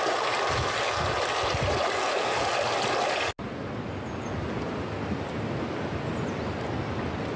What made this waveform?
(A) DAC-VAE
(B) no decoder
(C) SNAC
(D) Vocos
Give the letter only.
B